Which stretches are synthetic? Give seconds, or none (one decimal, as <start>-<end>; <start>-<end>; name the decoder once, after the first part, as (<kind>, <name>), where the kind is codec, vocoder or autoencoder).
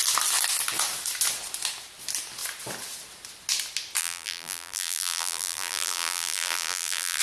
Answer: 4.0-7.2 (vocoder, BigVGAN v2)